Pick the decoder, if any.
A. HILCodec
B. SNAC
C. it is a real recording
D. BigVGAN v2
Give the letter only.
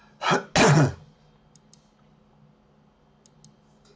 C